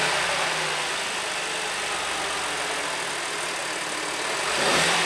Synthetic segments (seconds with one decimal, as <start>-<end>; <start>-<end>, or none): none